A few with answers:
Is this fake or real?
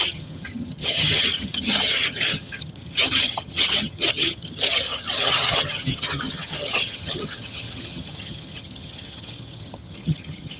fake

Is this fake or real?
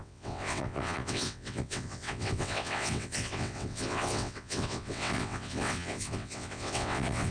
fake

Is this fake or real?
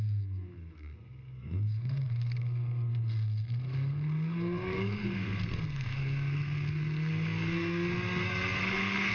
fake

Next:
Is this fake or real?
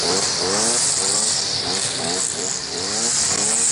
real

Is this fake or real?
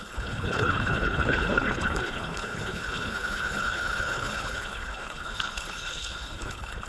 fake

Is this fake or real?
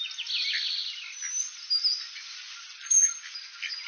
real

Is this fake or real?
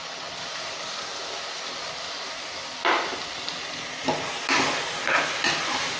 real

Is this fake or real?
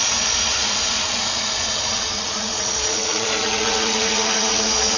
fake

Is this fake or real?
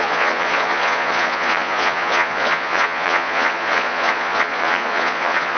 fake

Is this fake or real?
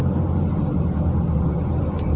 real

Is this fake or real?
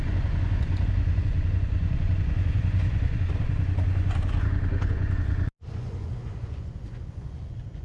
fake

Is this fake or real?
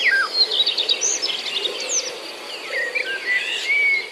real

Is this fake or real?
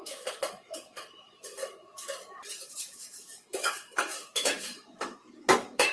fake